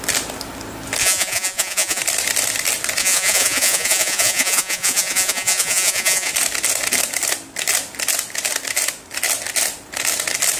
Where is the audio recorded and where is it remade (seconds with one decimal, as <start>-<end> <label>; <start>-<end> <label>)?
0.0-1.0 recorded; 1.0-2.0 remade; 2.0-3.0 recorded; 3.0-6.3 remade; 6.3-10.6 recorded